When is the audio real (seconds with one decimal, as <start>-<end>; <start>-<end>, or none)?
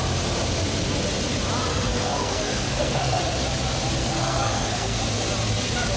0.0-1.7; 3.2-4.0; 5.0-6.0